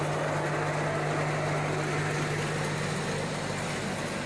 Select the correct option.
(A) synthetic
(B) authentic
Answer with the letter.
B